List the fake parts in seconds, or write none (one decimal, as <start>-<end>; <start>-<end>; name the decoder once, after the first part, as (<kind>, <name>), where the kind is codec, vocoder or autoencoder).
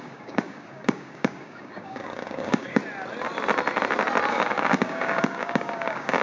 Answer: 0.0-2.8 (codec, DAC); 4.3-6.2